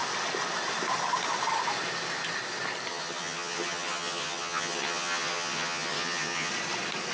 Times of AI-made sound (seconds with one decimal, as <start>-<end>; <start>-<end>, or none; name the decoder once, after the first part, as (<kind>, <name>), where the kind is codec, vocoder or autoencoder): 2.9-6.5 (vocoder, HiFi-GAN)